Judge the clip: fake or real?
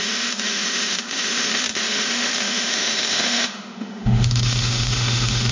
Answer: fake